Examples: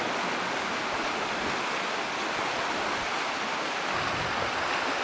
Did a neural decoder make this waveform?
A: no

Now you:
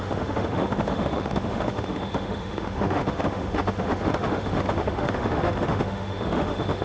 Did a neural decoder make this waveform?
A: yes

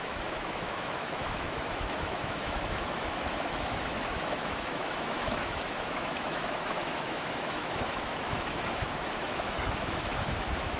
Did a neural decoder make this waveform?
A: yes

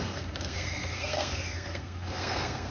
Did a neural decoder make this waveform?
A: yes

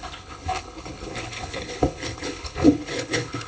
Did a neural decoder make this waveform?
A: yes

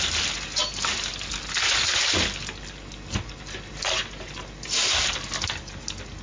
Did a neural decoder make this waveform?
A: no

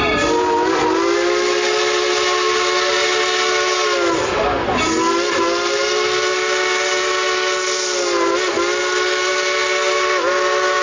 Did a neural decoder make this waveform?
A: no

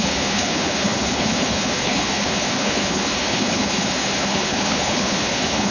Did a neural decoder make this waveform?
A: yes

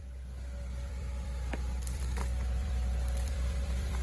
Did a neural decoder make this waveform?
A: yes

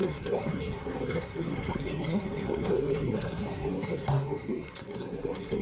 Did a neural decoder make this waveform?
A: yes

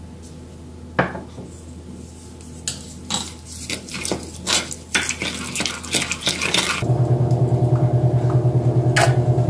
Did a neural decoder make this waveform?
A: no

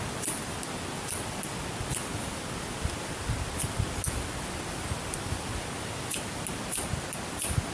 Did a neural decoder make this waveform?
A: no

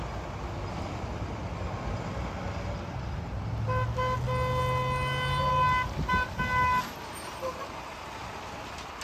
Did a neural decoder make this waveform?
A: no